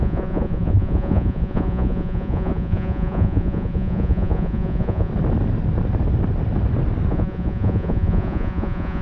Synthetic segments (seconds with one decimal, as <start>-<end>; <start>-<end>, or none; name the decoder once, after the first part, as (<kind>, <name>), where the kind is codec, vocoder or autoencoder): 0.0-5.1 (vocoder, Vocos); 7.1-9.0